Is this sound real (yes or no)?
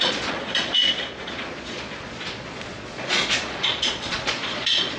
no